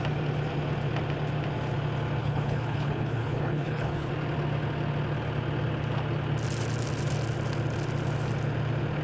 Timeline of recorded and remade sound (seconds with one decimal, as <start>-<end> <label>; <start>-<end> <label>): 0.0-2.2 recorded; 2.2-4.1 remade; 4.1-9.0 recorded